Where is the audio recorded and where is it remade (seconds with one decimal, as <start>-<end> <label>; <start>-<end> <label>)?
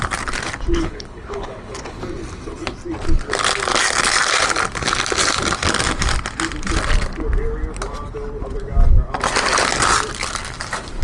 0.0-0.7 recorded; 0.7-2.0 remade; 2.0-11.0 recorded